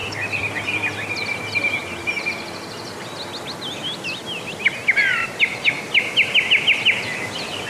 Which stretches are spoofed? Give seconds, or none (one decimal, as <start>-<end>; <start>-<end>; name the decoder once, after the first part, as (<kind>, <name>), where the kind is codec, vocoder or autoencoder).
none